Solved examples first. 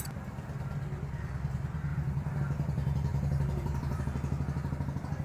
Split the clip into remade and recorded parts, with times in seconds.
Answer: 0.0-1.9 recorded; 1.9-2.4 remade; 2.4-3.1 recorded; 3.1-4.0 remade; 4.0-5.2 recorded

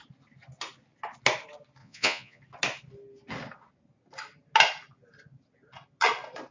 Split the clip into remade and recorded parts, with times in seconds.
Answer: 0.0-1.8 recorded; 1.8-2.4 remade; 2.4-6.5 recorded

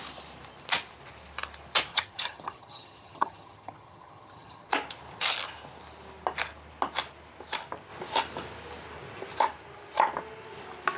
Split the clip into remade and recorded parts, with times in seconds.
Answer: 0.0-1.9 recorded; 1.9-4.7 remade; 4.7-11.0 recorded

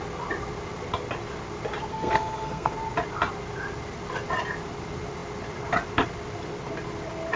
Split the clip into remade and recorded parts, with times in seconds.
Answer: 0.0-1.9 recorded; 1.9-2.7 remade; 2.7-7.4 recorded

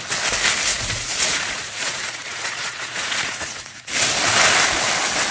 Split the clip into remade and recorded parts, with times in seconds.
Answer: 0.0-0.7 recorded; 0.7-3.9 remade; 3.9-5.3 recorded

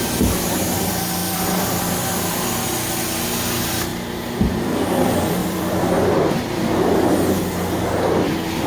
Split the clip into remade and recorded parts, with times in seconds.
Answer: 0.0-1.2 recorded; 1.2-1.8 remade; 1.8-5.4 recorded; 5.4-5.9 remade; 5.9-8.7 recorded

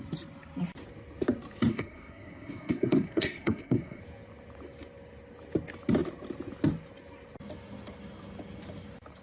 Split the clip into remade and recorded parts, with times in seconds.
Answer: 0.0-1.7 recorded; 1.7-4.0 remade; 4.0-9.2 recorded

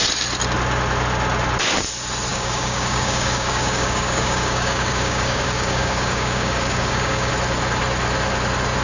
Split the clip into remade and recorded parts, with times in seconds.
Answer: 0.0-2.3 recorded; 2.3-7.3 remade; 7.3-8.8 recorded